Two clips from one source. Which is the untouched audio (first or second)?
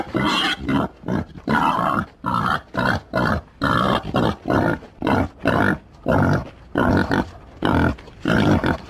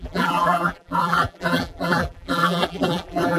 first